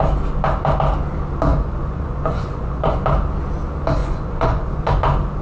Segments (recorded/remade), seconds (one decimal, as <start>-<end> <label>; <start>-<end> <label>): 0.0-1.5 recorded; 1.5-3.0 remade; 3.0-4.0 recorded; 4.0-4.9 remade; 4.9-5.4 recorded